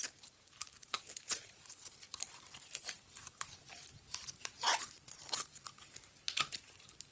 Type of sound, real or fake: fake